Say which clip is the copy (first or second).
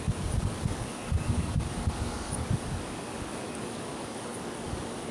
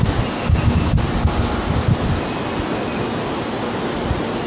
first